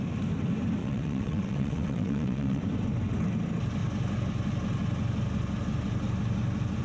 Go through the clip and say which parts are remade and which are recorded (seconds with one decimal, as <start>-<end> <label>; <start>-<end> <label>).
0.0-0.8 recorded; 0.8-2.6 remade; 2.6-6.8 recorded